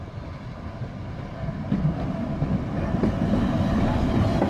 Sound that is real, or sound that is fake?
real